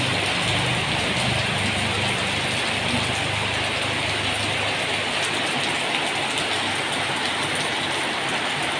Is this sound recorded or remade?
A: recorded